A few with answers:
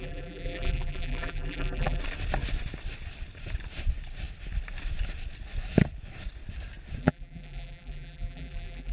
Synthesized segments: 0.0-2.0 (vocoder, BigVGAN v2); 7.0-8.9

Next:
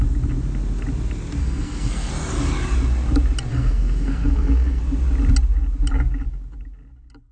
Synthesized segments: 1.4-2.1 (codec, SNAC); 3.5-4.8

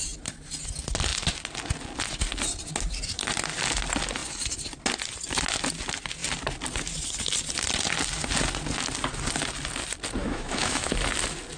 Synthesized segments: 10.2-10.9 (autoencoder, DAC-VAE)

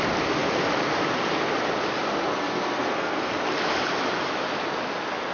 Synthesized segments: 2.3-3.3 (codec, SNAC)

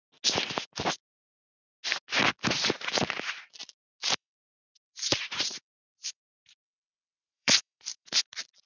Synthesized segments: 4.0-6.2 (vocoder, BigVGAN v2); 7.2-8.2

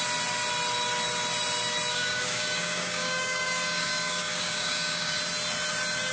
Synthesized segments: 1.9-5.2 (codec, DAC)

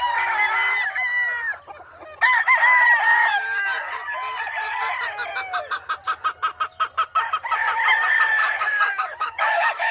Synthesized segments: 8.4-9.9 (codec, DAC)